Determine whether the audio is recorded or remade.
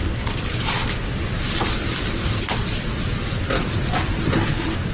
recorded